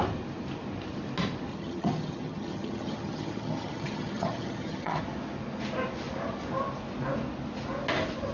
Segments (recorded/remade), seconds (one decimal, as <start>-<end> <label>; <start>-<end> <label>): 0.0-1.5 recorded; 1.5-5.0 remade; 5.0-8.3 recorded